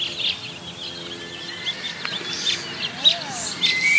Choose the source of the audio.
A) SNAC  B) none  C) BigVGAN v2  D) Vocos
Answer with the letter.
B